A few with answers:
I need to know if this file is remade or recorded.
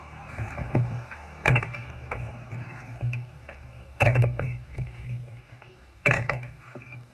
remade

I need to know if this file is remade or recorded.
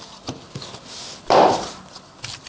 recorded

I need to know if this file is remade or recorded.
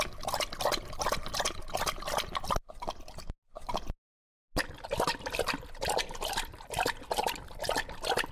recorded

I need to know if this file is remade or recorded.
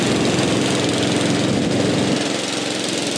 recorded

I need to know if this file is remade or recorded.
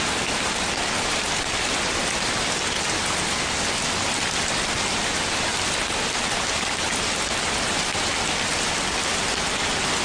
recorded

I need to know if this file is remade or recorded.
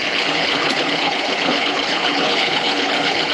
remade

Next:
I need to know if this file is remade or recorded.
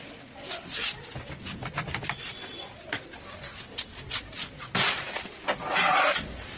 recorded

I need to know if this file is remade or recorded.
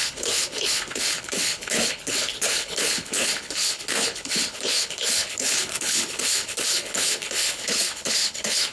remade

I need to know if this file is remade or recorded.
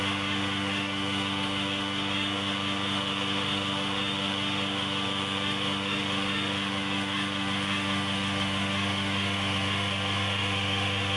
remade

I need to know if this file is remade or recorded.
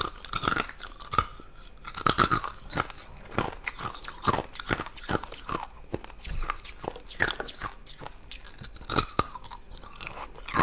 recorded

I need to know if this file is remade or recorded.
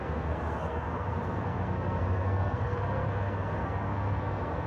remade